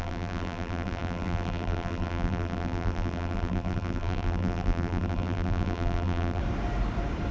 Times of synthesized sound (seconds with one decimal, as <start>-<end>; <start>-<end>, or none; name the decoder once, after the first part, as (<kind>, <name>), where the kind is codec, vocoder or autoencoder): 0.0-6.4 (vocoder, BigVGAN v2)